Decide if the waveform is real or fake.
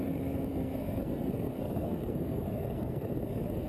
fake